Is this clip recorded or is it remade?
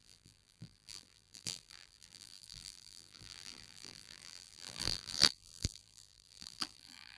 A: remade